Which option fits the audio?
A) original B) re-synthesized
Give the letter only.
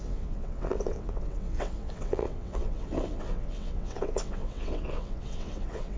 B